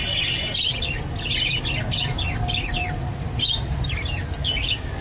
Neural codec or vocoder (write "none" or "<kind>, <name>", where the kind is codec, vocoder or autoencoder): none